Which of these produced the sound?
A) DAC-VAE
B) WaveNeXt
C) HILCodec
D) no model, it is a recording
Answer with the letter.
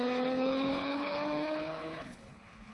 C